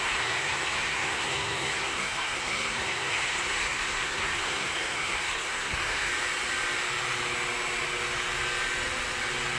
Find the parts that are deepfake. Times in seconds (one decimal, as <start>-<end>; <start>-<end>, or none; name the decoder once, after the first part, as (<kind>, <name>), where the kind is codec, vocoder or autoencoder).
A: 0.0-6.1 (codec, SNAC)